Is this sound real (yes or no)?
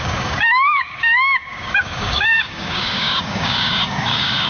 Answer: no